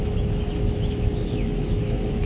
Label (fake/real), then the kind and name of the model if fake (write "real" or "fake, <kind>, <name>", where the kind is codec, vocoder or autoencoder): fake, autoencoder, DAC-VAE